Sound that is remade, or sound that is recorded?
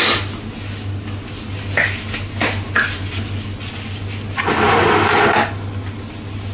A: recorded